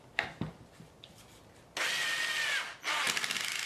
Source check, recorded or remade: recorded